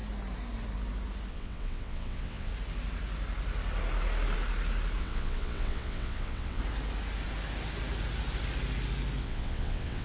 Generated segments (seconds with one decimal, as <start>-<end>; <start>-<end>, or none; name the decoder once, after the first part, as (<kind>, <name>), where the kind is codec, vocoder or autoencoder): 1.3-2.5 (vocoder, WaveNeXt); 5.0-6.6; 9.2-10.0